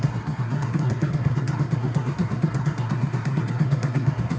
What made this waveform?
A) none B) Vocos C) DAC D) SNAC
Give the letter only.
D